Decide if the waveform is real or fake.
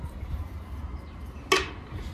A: real